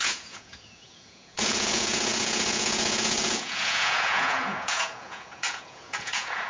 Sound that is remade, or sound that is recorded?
remade